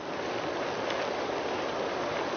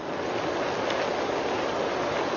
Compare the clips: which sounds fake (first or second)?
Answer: first